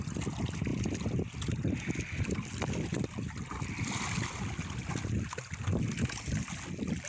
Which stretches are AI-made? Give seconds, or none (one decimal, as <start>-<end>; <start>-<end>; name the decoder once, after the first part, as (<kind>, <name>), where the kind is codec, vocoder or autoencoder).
none